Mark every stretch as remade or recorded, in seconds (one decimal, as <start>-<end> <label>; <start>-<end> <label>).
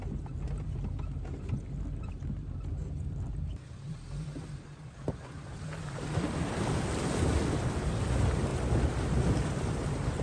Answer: 0.0-2.8 recorded; 2.8-6.6 remade; 6.6-8.5 recorded; 8.5-10.2 remade